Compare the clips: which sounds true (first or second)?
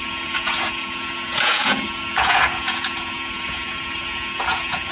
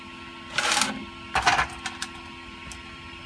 second